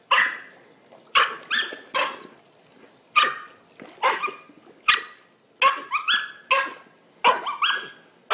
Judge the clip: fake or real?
real